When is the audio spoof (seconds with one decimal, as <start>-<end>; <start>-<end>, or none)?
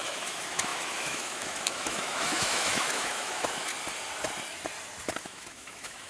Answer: 0.0-3.7; 5.2-6.1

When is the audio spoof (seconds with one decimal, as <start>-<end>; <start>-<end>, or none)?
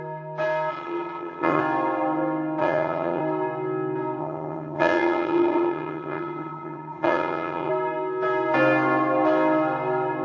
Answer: 0.7-1.6; 2.6-3.2; 4.2-7.7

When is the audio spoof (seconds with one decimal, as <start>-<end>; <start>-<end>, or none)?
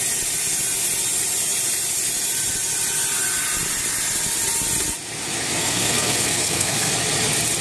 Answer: 5.6-6.9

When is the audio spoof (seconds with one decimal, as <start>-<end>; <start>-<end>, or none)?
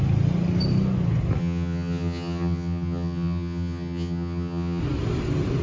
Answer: 1.4-4.8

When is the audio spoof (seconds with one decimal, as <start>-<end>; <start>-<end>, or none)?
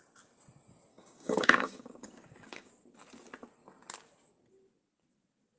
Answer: 0.9-2.7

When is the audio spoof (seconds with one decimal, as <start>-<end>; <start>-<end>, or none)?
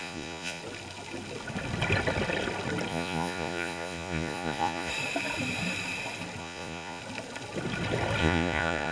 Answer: 0.0-0.6; 2.9-4.9; 6.4-7.0; 8.2-8.9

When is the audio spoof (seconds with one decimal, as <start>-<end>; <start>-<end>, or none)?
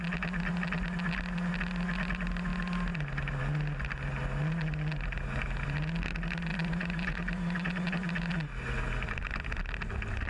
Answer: 6.5-8.3